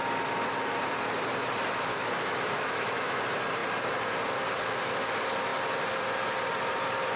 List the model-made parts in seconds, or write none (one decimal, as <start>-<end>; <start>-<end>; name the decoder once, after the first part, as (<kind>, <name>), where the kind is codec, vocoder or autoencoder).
1.9-3.2 (autoencoder, DAC-VAE)